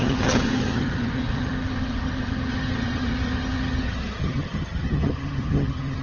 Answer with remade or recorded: remade